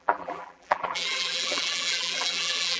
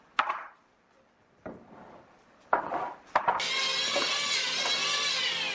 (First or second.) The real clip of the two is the second